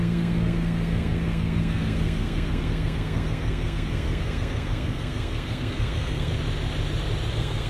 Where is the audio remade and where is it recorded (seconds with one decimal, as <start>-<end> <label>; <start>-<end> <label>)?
0.0-6.3 remade; 6.3-7.3 recorded; 7.3-7.7 remade